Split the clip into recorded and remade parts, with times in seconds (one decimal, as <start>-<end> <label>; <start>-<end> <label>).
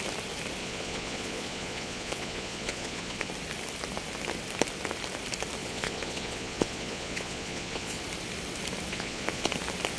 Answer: 0.0-0.6 recorded; 0.6-3.3 remade; 3.3-5.6 recorded; 5.6-8.0 remade; 8.0-8.9 recorded; 8.9-9.5 remade; 9.5-10.0 recorded